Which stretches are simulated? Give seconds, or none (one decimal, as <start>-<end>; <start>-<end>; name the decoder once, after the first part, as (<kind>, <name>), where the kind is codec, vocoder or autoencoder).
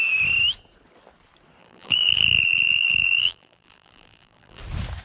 1.6-4.6 (vocoder, BigVGAN v2)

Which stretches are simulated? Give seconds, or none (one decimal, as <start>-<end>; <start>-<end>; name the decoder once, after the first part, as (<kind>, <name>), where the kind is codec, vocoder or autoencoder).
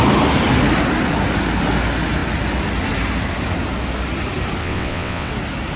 4.6-5.3 (vocoder, WaveNeXt)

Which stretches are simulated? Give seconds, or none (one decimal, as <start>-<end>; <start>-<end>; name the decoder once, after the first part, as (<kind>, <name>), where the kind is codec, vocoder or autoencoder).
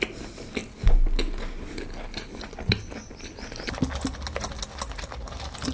none